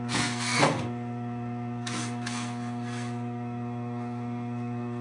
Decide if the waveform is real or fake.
fake